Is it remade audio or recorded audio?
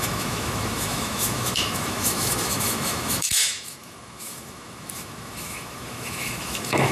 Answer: remade